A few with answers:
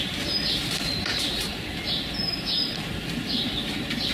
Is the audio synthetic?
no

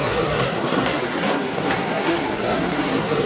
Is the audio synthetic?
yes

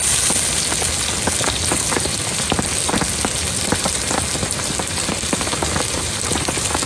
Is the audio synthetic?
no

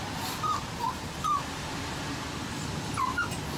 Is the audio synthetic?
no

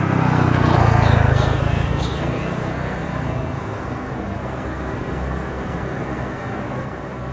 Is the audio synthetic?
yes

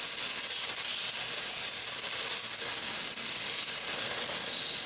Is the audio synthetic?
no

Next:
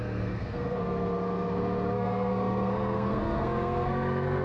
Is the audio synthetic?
yes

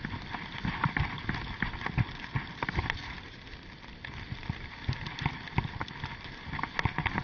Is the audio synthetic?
no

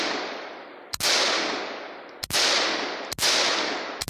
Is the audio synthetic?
no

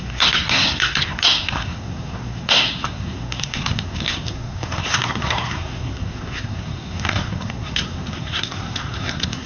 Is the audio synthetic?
yes